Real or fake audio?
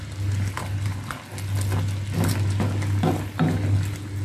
real